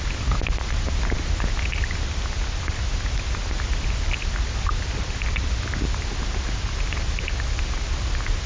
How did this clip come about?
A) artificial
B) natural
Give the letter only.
B